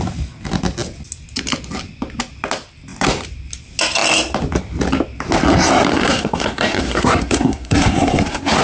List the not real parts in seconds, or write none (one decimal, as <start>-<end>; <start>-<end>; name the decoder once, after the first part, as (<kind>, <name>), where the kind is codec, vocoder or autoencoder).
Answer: 5.9-8.6 (codec, SNAC)